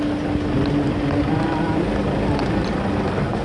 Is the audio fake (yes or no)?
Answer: no